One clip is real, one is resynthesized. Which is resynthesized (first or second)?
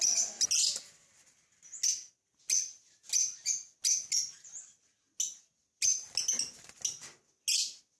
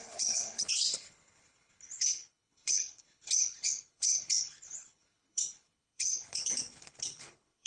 second